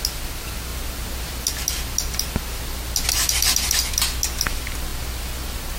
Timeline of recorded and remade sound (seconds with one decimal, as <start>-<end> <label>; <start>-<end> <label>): 0.0-5.8 recorded